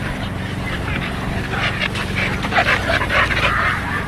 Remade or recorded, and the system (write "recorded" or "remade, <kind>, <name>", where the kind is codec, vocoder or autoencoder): recorded